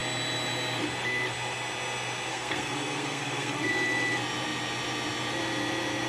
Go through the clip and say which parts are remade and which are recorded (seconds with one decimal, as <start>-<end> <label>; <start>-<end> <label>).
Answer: 0.0-2.3 recorded; 2.3-3.7 remade; 3.7-6.1 recorded